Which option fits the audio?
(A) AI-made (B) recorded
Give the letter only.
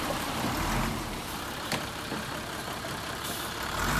A